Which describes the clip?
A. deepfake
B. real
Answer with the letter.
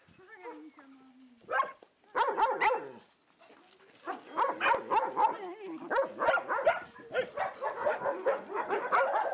B